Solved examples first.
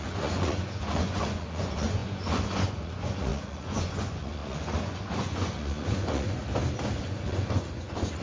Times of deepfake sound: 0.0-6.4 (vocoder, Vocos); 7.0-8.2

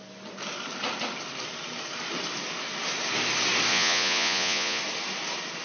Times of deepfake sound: 3.7-4.8 (vocoder, Vocos)